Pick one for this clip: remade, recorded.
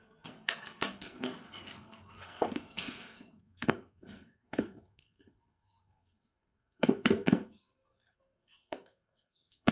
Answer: remade